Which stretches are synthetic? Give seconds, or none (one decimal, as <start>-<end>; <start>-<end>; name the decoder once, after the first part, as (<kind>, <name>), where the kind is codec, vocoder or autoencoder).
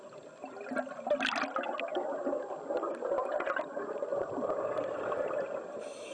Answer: none